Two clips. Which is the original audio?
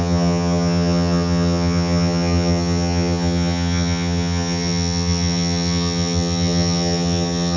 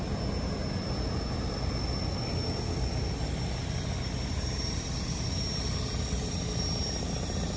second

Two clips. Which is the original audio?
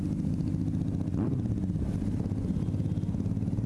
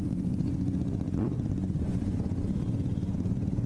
first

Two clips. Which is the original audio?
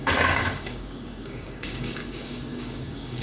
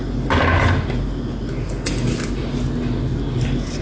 second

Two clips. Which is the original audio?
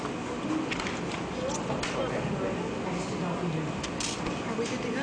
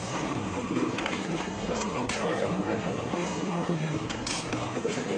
first